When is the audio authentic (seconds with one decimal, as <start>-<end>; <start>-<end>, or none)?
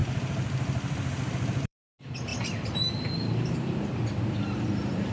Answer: none